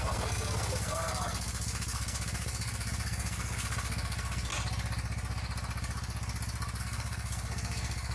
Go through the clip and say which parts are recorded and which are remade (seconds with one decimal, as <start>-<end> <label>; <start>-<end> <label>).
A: 0.0-4.5 remade; 4.5-6.8 recorded; 6.8-8.1 remade